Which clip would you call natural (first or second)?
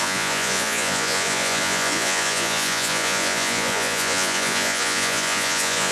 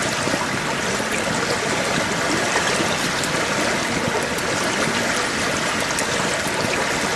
second